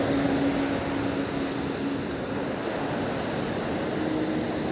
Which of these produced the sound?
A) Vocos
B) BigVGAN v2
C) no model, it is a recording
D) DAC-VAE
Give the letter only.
C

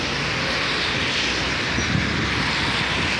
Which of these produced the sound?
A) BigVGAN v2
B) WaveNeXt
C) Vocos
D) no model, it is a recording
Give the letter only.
D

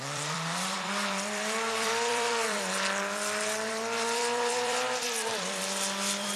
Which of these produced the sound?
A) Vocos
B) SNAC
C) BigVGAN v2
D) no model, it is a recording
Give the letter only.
C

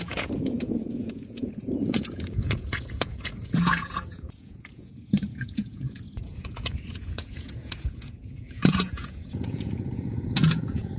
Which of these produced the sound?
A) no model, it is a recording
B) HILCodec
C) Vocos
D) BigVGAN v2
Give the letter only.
C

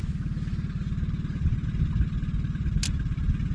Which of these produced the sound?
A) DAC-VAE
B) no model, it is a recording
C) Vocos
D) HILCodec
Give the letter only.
B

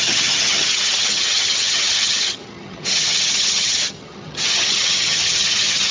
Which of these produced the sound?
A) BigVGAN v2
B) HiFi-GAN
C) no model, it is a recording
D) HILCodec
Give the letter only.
B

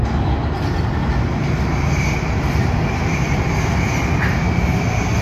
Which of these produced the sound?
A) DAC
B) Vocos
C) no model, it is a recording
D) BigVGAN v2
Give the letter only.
C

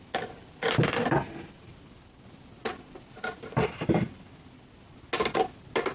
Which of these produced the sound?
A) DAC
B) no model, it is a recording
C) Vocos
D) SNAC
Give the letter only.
B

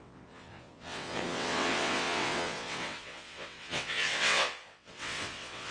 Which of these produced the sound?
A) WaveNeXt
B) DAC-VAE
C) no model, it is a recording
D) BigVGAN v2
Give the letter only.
A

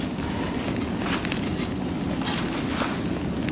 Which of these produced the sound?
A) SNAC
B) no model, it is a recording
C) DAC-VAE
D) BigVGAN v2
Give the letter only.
B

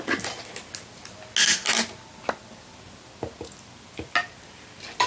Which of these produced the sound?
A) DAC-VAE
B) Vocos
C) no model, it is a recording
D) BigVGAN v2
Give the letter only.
C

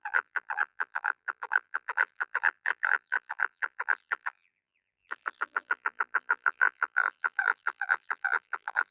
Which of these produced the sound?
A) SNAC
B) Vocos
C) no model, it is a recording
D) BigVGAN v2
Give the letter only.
D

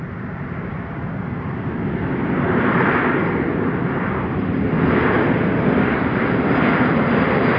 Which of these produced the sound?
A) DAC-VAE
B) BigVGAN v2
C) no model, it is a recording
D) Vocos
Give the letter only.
B